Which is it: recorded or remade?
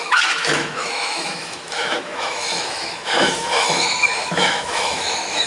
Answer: remade